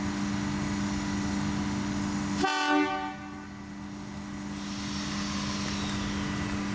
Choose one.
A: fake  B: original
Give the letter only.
B